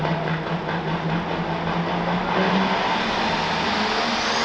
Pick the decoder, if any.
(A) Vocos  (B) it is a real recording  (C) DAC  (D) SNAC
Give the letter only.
B